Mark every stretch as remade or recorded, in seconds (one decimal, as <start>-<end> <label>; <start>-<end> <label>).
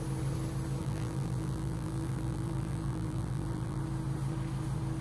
0.0-0.8 recorded; 0.8-3.8 remade; 3.8-5.0 recorded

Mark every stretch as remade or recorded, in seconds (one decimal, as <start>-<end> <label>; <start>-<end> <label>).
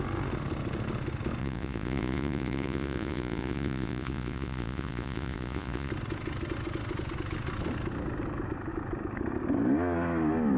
0.0-1.4 recorded; 1.4-5.9 remade; 5.9-10.6 recorded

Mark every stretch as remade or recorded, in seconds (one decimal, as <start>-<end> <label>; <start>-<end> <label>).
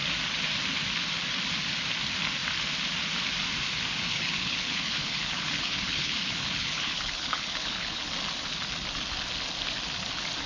0.0-4.1 recorded; 4.1-8.1 remade; 8.1-10.5 recorded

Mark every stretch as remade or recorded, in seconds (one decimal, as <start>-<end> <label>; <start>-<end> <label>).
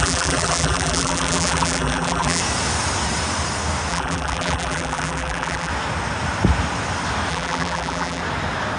0.0-2.4 remade; 2.4-3.9 recorded; 3.9-5.7 remade; 5.7-7.3 recorded; 7.3-8.2 remade; 8.2-8.8 recorded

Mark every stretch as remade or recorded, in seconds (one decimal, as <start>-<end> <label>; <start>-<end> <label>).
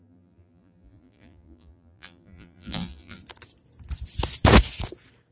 0.0-3.2 remade; 3.2-5.3 recorded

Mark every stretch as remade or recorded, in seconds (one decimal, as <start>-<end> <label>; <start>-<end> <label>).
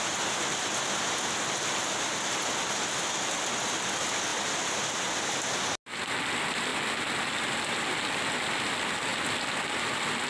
0.0-10.3 recorded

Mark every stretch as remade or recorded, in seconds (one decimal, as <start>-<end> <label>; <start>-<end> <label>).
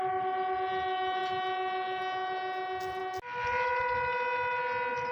0.0-5.1 recorded